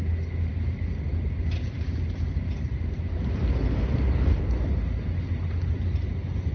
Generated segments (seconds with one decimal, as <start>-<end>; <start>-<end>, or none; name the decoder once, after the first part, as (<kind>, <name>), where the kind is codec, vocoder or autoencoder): none